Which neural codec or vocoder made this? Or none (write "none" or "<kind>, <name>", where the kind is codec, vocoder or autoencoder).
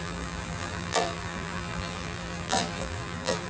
vocoder, BigVGAN v2